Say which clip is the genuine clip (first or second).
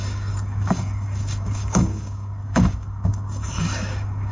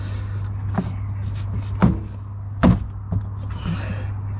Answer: second